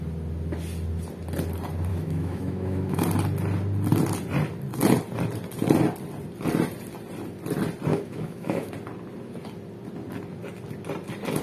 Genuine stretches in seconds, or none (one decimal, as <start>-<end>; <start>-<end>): 0.0-1.9; 3.0-7.9; 8.7-11.4